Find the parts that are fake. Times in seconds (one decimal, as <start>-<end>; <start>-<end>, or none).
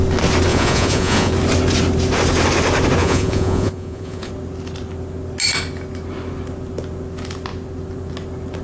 0.5-1.3; 3.0-4.3